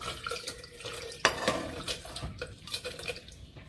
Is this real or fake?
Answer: fake